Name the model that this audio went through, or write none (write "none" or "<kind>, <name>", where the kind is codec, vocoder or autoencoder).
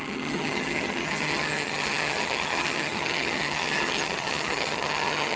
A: vocoder, HiFi-GAN